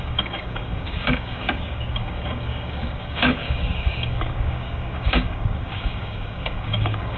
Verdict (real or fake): fake